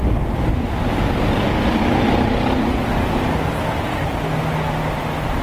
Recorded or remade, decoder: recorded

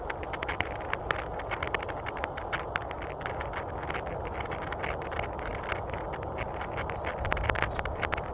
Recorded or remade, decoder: recorded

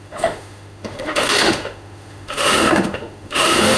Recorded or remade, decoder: remade, autoencoder, DAC-VAE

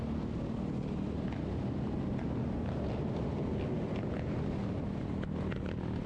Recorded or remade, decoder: recorded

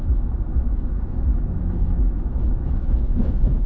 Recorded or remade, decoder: remade, autoencoder, DAC-VAE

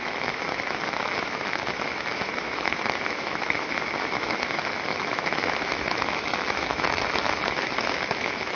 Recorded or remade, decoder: remade, autoencoder, DAC-VAE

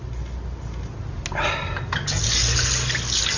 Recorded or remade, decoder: recorded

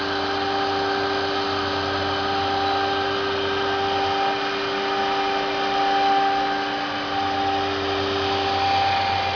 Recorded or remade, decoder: recorded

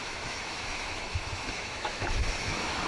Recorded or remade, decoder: remade, autoencoder, DAC-VAE